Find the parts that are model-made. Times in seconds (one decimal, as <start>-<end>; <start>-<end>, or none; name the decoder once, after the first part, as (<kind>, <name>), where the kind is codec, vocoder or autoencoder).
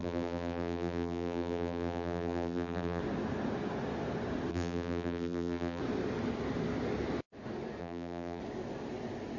0.0-3.0 (vocoder, BigVGAN v2); 4.5-5.8; 7.8-8.4